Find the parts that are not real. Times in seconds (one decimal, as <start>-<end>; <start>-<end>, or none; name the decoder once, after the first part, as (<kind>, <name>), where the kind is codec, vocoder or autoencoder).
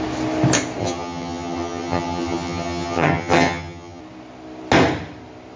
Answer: 0.8-4.0 (vocoder, HiFi-GAN)